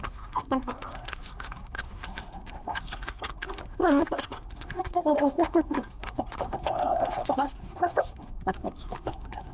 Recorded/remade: remade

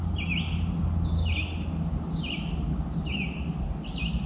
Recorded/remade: recorded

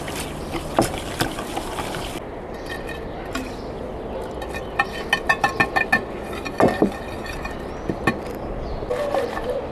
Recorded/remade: recorded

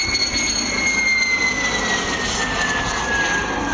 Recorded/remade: recorded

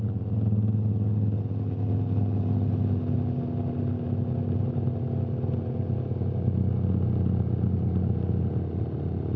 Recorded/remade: recorded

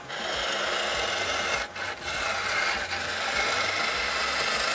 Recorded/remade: recorded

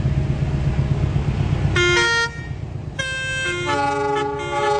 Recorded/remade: recorded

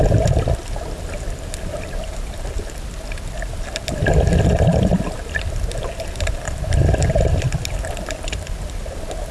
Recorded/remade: recorded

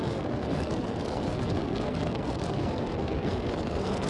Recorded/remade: remade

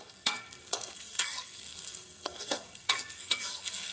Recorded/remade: remade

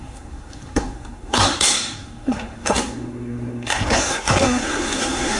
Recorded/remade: remade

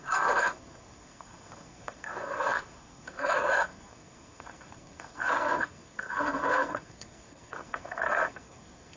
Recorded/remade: remade